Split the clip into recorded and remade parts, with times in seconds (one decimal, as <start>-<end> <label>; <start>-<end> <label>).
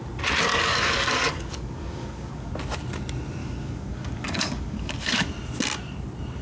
0.0-0.5 recorded; 0.5-2.5 remade; 2.5-3.4 recorded; 3.4-5.3 remade; 5.3-6.4 recorded